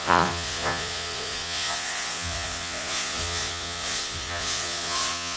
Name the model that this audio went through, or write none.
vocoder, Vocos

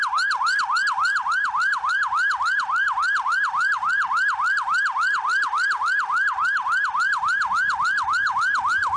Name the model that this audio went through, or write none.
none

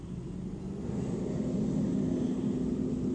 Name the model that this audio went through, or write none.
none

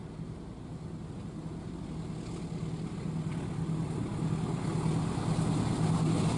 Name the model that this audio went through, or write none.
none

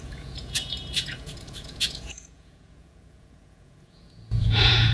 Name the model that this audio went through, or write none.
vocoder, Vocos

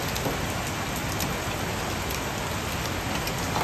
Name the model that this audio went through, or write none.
none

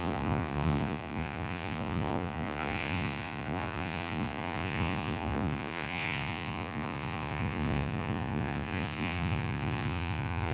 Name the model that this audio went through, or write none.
vocoder, Vocos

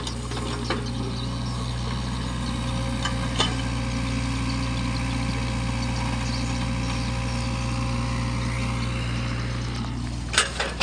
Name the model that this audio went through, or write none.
none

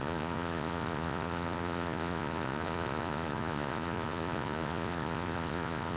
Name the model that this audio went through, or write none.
vocoder, Vocos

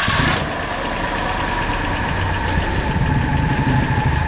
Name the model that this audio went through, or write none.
none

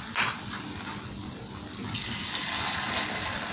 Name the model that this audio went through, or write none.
none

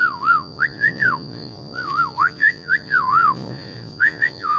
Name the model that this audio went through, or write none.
vocoder, Vocos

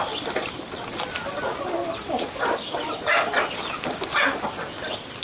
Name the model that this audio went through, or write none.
none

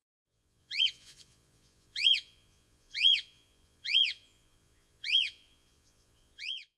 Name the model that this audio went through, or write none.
vocoder, Vocos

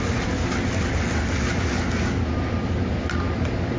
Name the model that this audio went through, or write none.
none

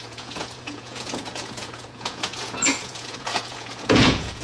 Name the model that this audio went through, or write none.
vocoder, Vocos